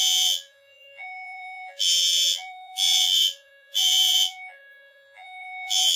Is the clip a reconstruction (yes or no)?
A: yes